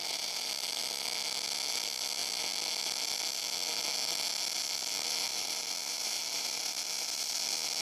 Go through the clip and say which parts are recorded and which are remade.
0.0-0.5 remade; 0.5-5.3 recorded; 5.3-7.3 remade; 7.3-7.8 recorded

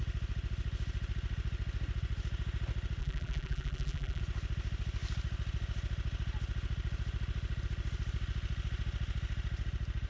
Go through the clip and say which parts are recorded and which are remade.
0.0-3.0 recorded; 3.0-4.2 remade; 4.2-10.1 recorded

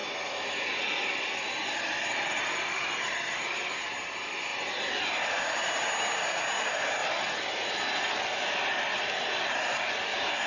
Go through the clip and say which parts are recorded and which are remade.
0.0-3.7 remade; 3.7-7.0 recorded; 7.0-9.6 remade; 9.6-10.5 recorded

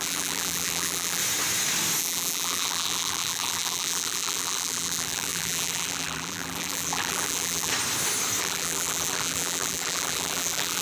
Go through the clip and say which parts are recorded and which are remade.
0.0-1.2 remade; 1.2-2.0 recorded; 2.0-7.7 remade; 7.7-8.4 recorded; 8.4-10.8 remade

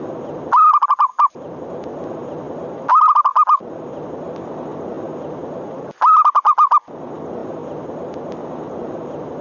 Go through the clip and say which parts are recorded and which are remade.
0.0-1.1 recorded; 1.1-1.7 remade; 1.7-9.4 recorded

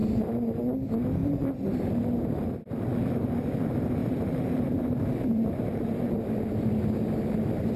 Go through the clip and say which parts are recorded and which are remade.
0.0-0.6 remade; 0.6-1.2 recorded; 1.2-2.7 remade; 2.7-4.0 recorded; 4.0-6.2 remade; 6.2-7.8 recorded

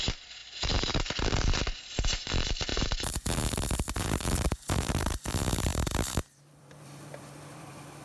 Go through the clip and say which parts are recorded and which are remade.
0.0-5.7 remade; 5.7-6.2 recorded; 6.2-8.0 remade